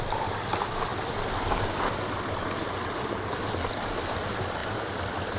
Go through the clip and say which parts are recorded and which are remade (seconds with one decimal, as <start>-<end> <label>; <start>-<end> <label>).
0.0-5.4 recorded